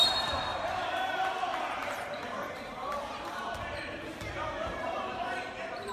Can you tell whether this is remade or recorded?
remade